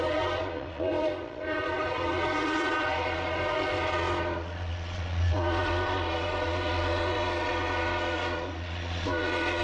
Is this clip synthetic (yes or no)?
yes